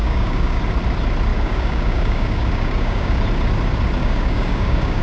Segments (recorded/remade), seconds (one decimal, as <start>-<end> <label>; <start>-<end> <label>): 0.0-0.6 remade; 0.6-1.3 recorded; 1.3-3.2 remade; 3.2-4.0 recorded; 4.0-5.0 remade